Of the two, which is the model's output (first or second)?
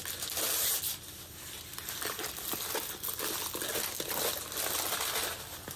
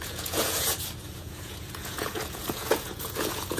second